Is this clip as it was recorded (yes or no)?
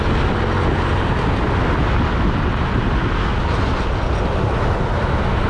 yes